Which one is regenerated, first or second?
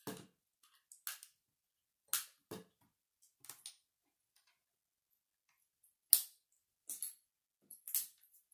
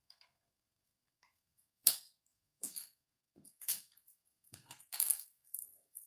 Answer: second